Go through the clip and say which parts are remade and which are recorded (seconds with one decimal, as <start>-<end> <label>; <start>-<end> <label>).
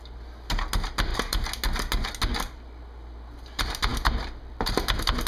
0.0-3.9 recorded; 3.9-4.6 remade; 4.6-5.3 recorded